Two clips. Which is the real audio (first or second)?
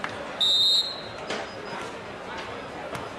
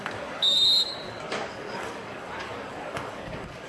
first